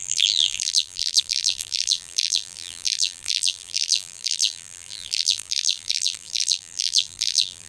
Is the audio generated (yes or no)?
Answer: yes